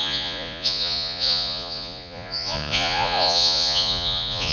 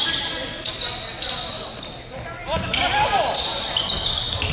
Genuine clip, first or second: second